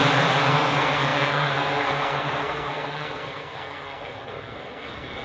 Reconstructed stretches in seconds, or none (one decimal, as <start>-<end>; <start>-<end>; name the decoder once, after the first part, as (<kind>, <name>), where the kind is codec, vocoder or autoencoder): 0.5-5.2 (codec, SNAC)